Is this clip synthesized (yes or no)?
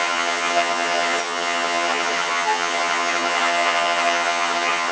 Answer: yes